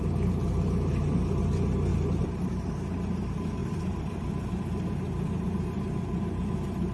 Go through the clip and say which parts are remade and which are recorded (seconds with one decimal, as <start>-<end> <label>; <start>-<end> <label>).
0.0-1.9 recorded; 1.9-2.5 remade; 2.5-3.6 recorded; 3.6-4.5 remade; 4.5-6.9 recorded